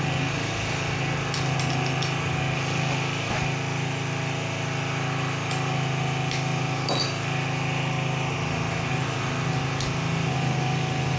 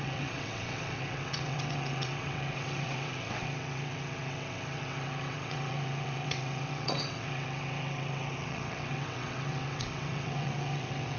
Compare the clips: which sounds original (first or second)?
first